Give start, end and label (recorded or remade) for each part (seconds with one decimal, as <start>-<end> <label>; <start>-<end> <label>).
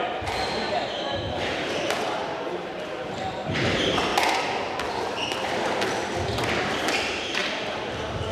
0.0-4.1 remade; 4.1-6.6 recorded; 6.6-7.4 remade; 7.4-7.9 recorded; 7.9-8.3 remade